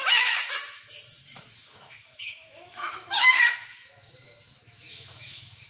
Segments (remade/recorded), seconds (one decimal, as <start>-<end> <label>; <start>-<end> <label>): 0.0-5.7 remade